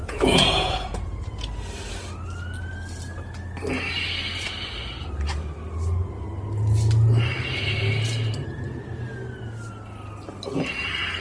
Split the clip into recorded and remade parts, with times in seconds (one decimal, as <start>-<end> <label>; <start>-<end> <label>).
0.0-1.2 remade; 1.2-11.2 recorded